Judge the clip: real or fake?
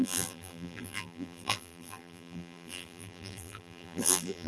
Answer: fake